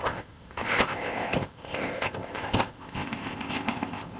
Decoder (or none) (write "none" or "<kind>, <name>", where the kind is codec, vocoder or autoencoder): codec, ZipCodec